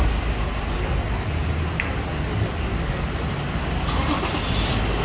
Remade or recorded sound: recorded